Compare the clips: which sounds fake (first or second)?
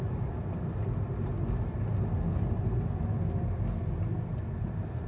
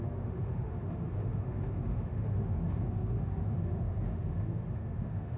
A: second